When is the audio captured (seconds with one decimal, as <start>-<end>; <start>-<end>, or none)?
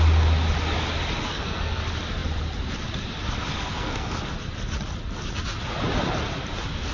0.0-1.3; 1.8-3.5; 4.2-6.9